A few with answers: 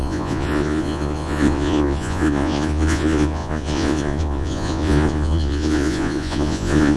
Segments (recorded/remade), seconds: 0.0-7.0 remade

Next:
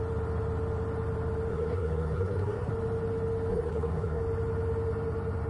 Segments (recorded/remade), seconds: 0.0-1.5 recorded; 1.5-2.7 remade; 2.7-3.5 recorded; 3.5-4.2 remade; 4.2-5.5 recorded